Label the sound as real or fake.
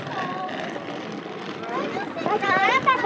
fake